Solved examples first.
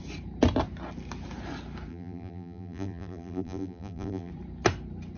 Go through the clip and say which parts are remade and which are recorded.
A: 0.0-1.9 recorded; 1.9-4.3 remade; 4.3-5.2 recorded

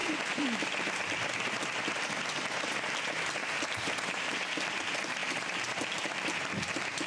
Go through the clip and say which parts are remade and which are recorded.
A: 0.0-5.2 recorded; 5.2-6.2 remade; 6.2-7.1 recorded

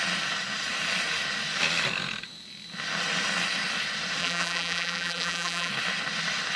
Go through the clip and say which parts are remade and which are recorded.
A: 0.0-4.2 recorded; 4.2-5.7 remade; 5.7-6.6 recorded

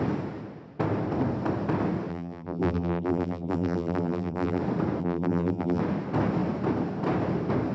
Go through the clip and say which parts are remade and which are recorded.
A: 0.0-2.1 recorded; 2.1-4.6 remade; 4.6-5.0 recorded; 5.0-5.8 remade; 5.8-7.7 recorded